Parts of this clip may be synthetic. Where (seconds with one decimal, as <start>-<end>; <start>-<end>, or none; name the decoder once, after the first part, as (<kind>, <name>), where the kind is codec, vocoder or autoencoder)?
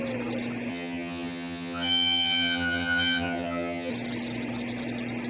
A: 0.7-3.9 (vocoder, HiFi-GAN)